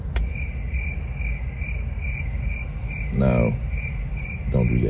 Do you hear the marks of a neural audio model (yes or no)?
no